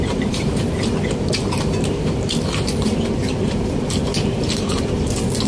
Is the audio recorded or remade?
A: remade